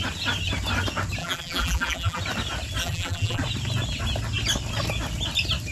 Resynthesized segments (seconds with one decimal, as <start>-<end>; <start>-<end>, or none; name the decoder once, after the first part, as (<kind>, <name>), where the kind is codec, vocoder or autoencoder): 1.2-2.2 (vocoder, BigVGAN v2); 2.8-3.4